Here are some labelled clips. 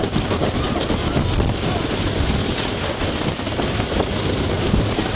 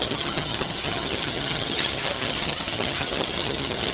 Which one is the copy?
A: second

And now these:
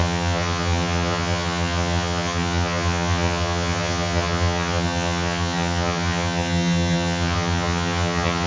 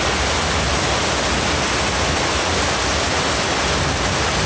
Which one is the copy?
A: first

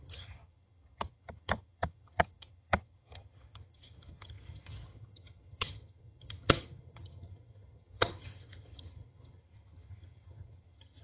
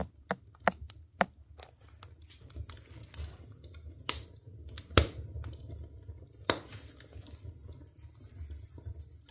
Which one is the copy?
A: first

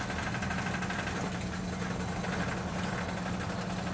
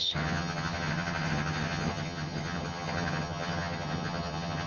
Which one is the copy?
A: second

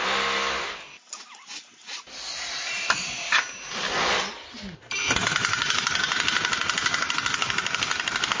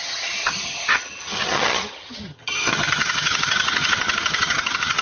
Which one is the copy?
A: second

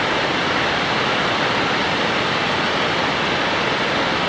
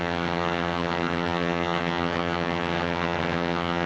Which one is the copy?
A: second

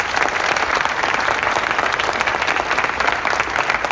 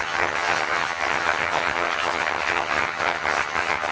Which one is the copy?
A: second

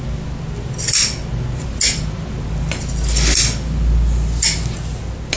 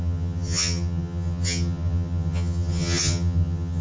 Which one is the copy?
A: second